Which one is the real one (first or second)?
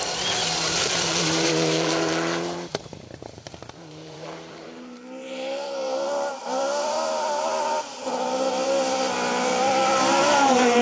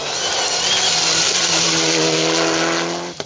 second